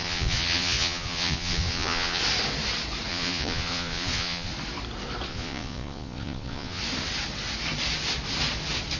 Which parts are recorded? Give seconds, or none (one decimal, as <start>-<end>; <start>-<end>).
2.2-3.1; 4.5-5.3; 6.8-9.0

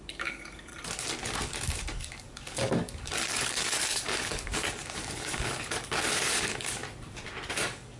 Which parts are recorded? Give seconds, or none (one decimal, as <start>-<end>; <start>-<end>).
0.7-1.2; 6.8-7.5